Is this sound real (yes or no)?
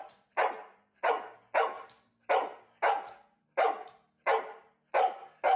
yes